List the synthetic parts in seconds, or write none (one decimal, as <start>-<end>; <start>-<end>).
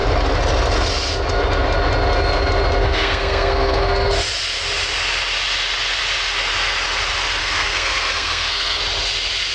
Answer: 2.8-4.1; 7.4-8.8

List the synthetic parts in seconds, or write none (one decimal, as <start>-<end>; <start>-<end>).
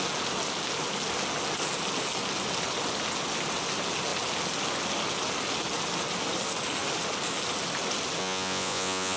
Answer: 8.2-9.2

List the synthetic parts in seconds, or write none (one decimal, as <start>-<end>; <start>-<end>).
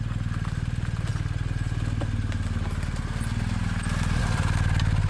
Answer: none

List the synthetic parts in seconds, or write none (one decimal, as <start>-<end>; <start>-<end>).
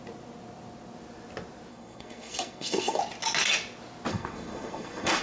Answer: 1.7-3.0; 4.1-5.2